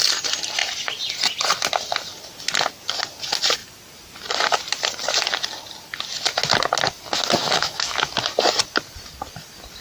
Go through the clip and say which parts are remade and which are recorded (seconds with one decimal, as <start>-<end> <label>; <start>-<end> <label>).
0.0-7.4 recorded; 7.4-8.1 remade; 8.1-9.8 recorded